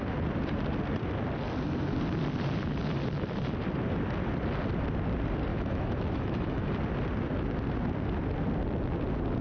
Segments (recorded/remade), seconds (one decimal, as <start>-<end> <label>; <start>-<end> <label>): 0.0-5.5 recorded; 5.5-6.7 remade; 6.7-9.4 recorded